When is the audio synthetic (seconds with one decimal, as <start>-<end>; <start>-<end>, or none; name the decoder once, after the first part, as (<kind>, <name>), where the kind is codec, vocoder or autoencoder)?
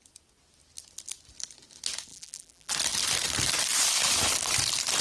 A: 2.1-2.7 (vocoder, BigVGAN v2)